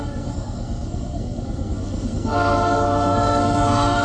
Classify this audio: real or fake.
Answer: fake